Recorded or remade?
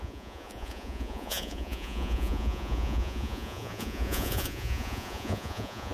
remade